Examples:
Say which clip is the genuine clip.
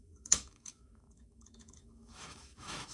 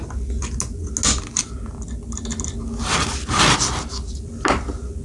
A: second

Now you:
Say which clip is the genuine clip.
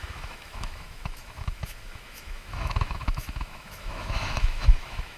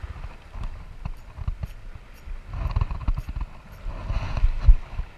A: second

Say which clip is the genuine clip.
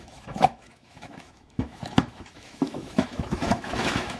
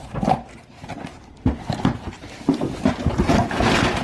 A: second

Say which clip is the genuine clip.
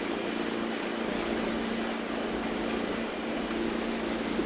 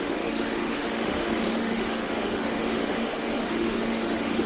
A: first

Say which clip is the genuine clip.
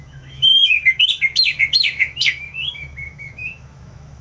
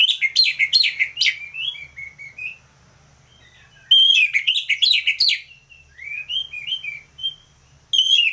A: second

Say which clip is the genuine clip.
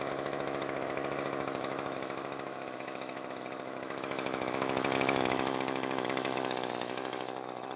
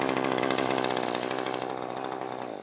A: second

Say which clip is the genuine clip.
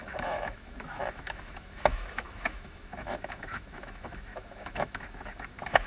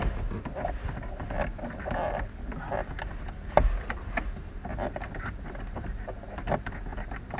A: second